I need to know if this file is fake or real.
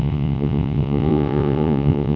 fake